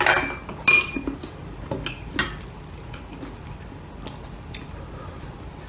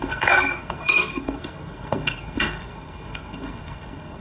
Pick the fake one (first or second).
second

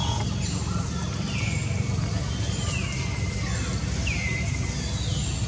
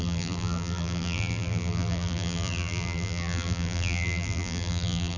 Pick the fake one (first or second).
second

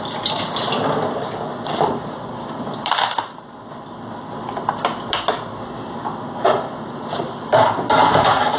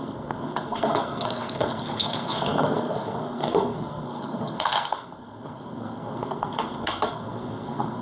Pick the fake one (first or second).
second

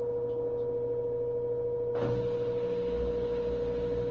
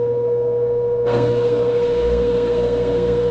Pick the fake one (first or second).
second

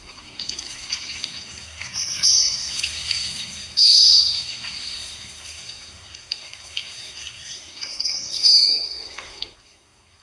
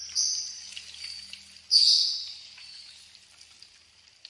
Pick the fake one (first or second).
first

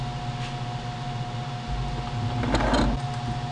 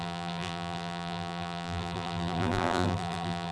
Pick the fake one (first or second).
second